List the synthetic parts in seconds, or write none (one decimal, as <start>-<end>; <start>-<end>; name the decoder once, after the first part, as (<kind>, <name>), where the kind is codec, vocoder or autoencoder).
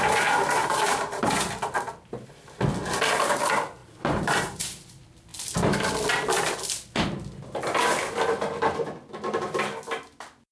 0.6-1.3 (vocoder, BigVGAN v2); 3.8-4.8